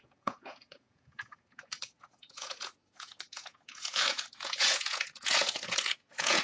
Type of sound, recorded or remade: remade